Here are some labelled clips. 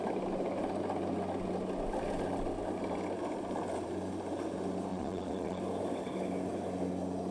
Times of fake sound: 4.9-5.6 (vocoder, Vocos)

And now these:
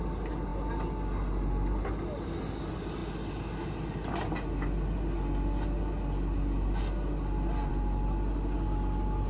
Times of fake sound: none